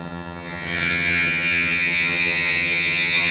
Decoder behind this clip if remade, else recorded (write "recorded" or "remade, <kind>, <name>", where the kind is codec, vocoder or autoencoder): remade, vocoder, HiFi-GAN